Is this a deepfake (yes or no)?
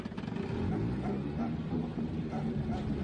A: no